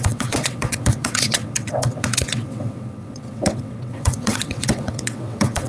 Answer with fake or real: fake